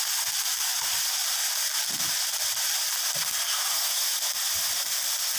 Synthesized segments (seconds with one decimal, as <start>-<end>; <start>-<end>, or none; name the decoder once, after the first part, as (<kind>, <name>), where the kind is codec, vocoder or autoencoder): none

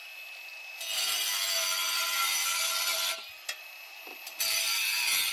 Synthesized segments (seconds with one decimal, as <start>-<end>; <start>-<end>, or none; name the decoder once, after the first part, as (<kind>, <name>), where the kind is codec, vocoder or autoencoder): none

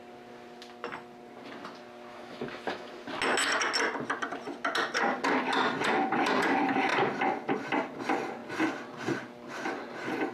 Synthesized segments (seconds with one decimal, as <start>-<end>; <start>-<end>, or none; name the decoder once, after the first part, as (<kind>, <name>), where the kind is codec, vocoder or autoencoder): 2.1-2.9 (autoencoder, DAC-VAE)

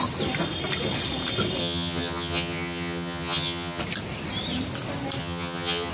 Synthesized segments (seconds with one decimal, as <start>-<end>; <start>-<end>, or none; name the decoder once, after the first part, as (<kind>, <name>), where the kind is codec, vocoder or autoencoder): 1.6-3.8 (vocoder, HiFi-GAN); 5.2-5.9

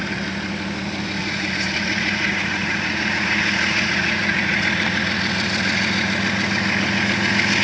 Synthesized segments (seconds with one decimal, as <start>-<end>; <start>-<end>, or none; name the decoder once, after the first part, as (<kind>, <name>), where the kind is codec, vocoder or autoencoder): 1.2-4.6 (vocoder, Vocos)